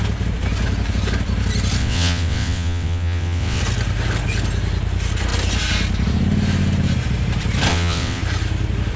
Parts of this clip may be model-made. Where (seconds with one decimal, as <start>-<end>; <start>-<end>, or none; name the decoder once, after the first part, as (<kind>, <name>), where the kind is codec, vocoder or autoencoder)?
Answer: 1.8-3.6 (vocoder, WaveNeXt); 7.7-8.2